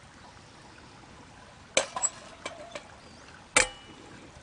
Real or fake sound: real